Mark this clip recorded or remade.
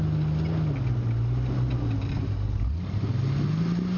recorded